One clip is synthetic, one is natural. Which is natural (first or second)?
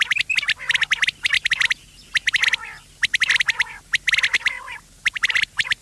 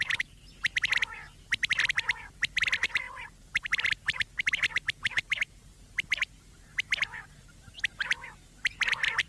first